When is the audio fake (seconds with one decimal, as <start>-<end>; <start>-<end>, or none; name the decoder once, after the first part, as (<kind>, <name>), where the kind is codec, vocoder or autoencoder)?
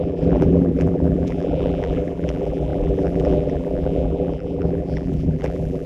0.0-5.9 (vocoder, BigVGAN v2)